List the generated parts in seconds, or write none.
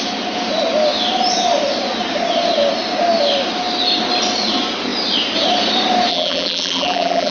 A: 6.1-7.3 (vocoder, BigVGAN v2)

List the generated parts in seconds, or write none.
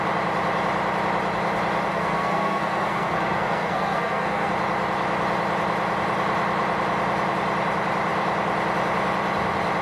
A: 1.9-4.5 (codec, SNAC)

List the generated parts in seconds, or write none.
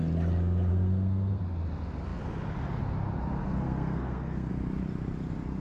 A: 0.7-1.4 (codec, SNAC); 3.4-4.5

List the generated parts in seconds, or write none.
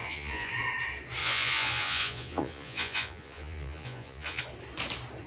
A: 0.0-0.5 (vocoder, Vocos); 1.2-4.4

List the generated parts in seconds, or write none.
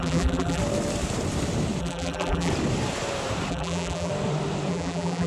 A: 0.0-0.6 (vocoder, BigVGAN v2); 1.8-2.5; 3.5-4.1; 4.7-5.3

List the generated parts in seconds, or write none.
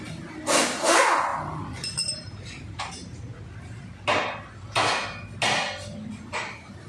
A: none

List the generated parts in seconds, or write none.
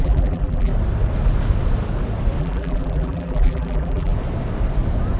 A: 0.0-0.7 (vocoder, BigVGAN v2); 2.4-4.1